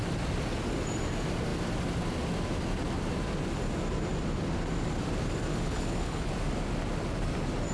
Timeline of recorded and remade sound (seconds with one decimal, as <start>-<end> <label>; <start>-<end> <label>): 0.0-5.5 recorded; 5.5-6.3 remade; 6.3-7.7 recorded